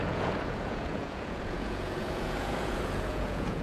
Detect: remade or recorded remade